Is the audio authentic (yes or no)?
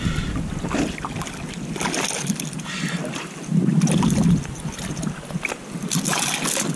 yes